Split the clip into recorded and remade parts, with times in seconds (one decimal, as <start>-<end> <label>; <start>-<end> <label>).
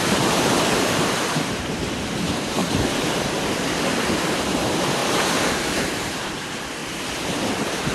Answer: 0.0-2.6 remade; 2.6-4.1 recorded; 4.1-5.0 remade; 5.0-5.5 recorded; 5.5-7.9 remade